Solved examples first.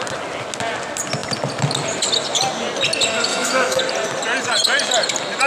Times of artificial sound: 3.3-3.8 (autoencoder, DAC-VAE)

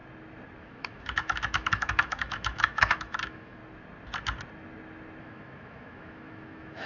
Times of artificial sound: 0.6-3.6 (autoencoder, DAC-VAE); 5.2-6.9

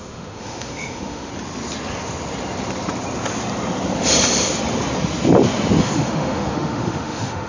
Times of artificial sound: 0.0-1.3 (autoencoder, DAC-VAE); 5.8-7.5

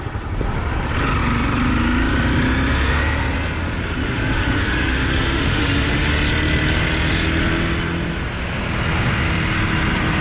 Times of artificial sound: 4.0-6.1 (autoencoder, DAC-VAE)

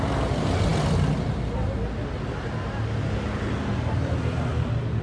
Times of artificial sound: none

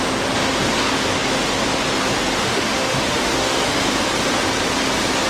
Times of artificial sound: 2.4-3.8 (autoencoder, DAC-VAE)